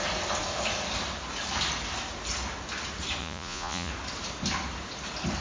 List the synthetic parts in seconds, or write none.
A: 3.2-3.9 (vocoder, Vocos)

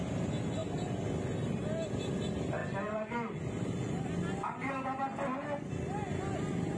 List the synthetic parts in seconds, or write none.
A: none

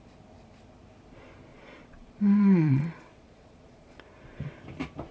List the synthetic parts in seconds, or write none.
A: 1.5-4.0 (vocoder, Vocos)

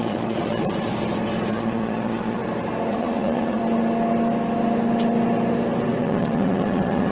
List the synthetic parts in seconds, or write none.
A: 0.0-0.9 (vocoder, Vocos); 1.5-2.4; 2.9-3.6; 6.0-7.1